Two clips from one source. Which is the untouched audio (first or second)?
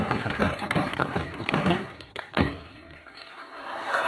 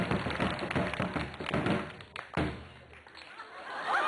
second